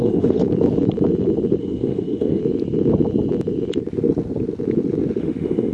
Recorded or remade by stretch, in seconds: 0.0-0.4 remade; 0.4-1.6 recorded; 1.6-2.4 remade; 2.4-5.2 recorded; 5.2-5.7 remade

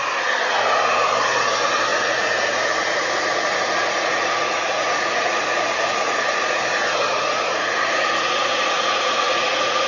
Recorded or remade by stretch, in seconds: 0.0-1.9 recorded; 1.9-6.6 remade; 6.6-7.1 recorded; 7.1-9.9 remade

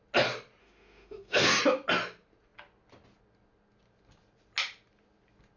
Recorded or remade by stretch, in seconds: 0.0-0.6 recorded; 0.6-1.6 remade; 1.6-5.6 recorded

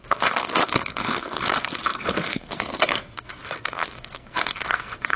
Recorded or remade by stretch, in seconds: 0.0-5.2 remade

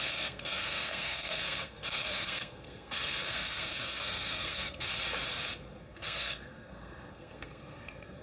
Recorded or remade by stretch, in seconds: 0.0-4.9 remade; 4.9-5.8 recorded; 5.8-8.2 remade